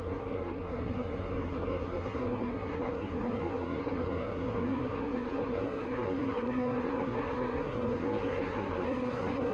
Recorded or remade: remade